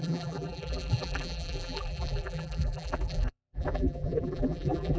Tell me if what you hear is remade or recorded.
remade